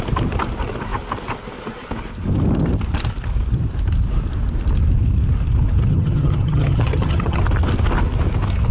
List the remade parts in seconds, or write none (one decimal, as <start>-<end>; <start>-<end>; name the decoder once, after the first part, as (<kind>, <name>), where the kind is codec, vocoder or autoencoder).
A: 5.9-7.4 (vocoder, HiFi-GAN)